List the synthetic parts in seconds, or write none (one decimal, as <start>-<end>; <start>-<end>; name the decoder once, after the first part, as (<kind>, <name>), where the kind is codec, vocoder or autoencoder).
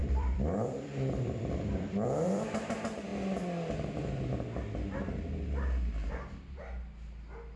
0.0-3.1 (vocoder, BigVGAN v2)